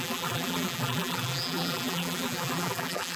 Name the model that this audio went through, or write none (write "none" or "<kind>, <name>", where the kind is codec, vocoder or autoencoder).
vocoder, BigVGAN v2